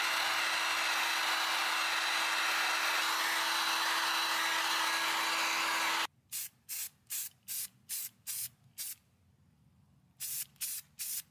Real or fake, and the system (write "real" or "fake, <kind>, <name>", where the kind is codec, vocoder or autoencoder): real